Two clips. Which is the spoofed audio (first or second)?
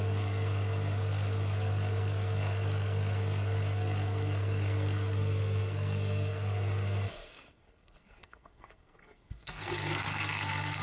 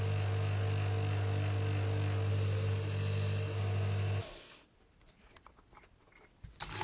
first